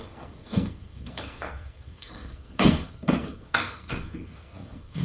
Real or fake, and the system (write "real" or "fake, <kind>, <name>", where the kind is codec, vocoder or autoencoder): fake, codec, SNAC